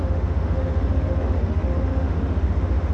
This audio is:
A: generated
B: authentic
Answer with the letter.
A